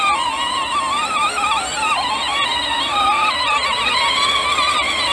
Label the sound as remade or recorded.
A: recorded